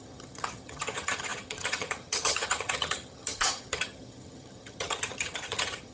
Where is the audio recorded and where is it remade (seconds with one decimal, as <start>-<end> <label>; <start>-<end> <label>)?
0.0-5.9 remade